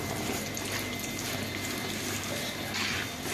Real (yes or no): yes